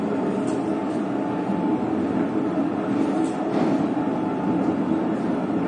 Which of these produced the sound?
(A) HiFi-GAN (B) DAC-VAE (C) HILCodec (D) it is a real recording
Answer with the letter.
D